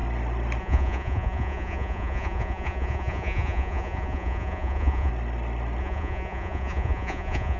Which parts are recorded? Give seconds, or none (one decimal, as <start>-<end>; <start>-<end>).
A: 0.0-0.6; 5.1-5.8